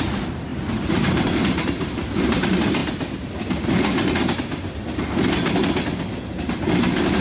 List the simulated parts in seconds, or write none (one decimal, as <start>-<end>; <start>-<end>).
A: 0.5-2.4